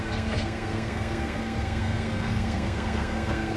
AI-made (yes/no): yes